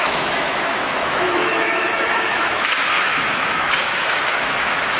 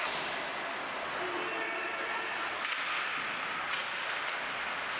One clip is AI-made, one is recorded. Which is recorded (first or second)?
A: second